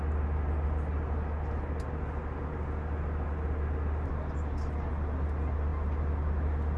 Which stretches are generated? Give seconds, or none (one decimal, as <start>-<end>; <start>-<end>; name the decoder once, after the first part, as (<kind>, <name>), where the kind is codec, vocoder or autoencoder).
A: none